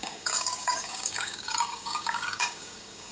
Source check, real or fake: fake